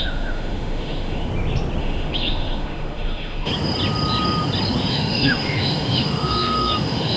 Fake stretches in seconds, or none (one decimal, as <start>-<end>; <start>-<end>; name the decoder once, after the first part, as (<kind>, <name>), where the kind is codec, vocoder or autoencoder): 0.0-1.3 (autoencoder, DAC-VAE); 1.8-3.5; 4.9-7.2